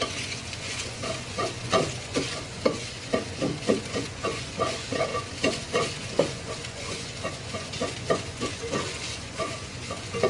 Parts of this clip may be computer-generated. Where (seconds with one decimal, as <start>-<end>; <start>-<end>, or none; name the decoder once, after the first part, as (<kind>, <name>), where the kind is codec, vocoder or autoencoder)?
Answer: 0.0-10.3 (vocoder, Vocos)